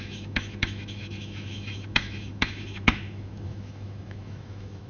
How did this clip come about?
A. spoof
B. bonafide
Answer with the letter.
A